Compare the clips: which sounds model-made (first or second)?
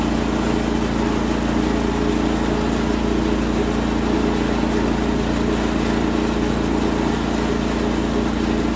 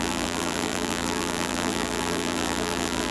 second